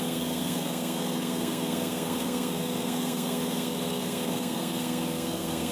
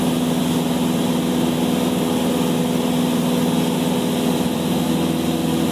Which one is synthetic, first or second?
first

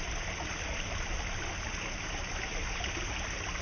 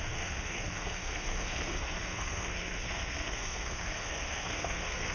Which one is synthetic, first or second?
second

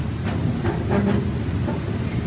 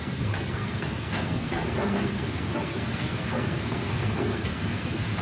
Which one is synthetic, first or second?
second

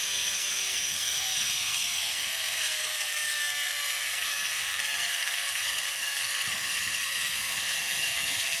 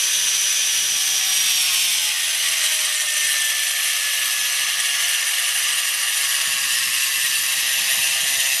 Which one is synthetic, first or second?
first